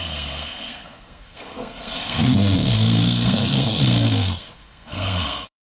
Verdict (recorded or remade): remade